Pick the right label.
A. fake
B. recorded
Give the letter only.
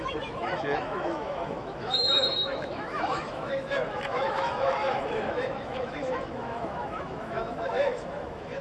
A